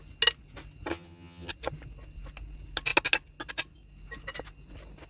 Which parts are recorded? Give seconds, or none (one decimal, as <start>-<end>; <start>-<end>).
0.0-0.9; 1.5-5.1